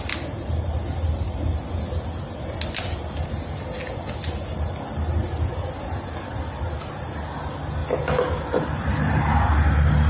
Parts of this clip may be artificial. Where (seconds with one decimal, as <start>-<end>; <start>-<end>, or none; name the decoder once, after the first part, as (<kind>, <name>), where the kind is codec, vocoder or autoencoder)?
none